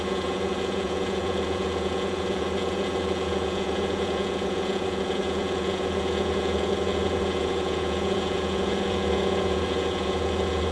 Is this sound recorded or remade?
remade